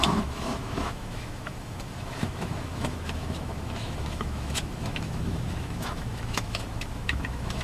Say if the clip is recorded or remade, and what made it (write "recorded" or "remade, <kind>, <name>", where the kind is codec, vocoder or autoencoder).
remade, autoencoder, DAC-VAE